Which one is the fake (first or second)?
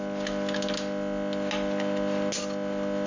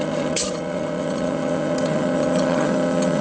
second